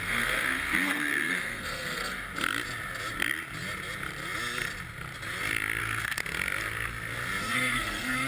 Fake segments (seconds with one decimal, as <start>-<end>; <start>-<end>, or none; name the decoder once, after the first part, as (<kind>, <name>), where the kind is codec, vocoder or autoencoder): 0.0-2.3 (codec, SNAC); 5.8-6.2; 7.4-8.3